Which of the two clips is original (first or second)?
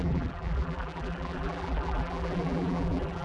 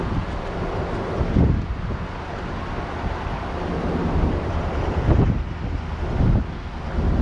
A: second